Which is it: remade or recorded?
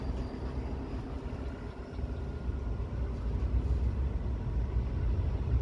recorded